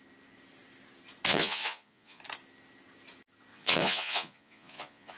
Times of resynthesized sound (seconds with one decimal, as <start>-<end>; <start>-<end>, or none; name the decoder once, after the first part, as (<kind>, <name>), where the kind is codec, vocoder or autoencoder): 1.3-2.2 (vocoder, Vocos); 3.5-5.2